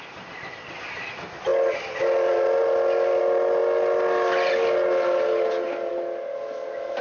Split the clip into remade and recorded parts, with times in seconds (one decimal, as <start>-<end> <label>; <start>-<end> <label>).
0.0-7.0 recorded